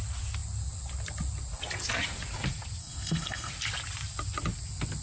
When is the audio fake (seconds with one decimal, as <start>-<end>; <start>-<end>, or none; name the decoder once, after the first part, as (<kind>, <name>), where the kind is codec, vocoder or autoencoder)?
2.8-3.5 (codec, SNAC)

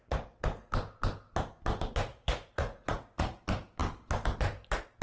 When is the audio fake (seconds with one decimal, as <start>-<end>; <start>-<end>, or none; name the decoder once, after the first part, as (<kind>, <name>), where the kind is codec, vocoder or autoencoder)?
2.1-3.4 (vocoder, Vocos)